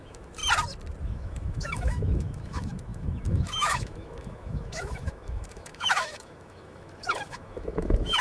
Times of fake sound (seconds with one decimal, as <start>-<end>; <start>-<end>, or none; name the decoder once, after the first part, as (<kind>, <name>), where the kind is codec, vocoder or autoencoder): 0.0-0.4 (autoencoder, DAC-VAE); 1.0-8.2